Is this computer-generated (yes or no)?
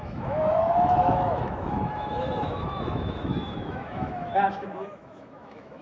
yes